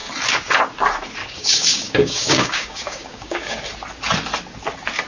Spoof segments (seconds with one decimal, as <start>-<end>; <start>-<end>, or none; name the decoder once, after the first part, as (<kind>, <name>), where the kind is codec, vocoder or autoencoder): 1.2-3.6 (codec, DAC)